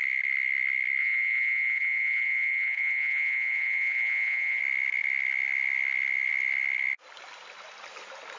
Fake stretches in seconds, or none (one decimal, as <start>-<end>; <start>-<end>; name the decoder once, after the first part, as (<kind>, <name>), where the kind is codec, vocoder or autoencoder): 1.0-4.6 (vocoder, Vocos)

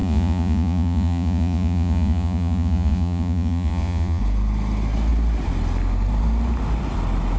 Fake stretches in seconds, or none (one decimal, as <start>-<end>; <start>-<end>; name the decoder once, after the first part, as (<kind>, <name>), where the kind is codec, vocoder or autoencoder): 0.0-4.2 (vocoder, Vocos)